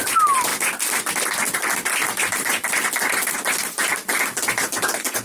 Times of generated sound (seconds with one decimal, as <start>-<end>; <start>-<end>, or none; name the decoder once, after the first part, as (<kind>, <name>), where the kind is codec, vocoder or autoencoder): none